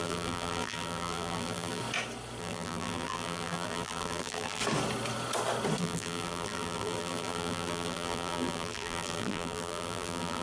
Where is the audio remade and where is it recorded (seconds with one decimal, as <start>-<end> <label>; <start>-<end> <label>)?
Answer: 0.0-1.8 remade; 1.8-2.4 recorded; 2.4-4.6 remade; 4.6-5.8 recorded; 5.8-10.4 remade